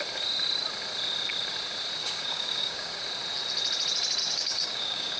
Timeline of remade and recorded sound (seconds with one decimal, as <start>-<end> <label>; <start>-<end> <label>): 0.0-2.0 recorded; 2.0-3.0 remade; 3.0-4.2 recorded; 4.2-5.2 remade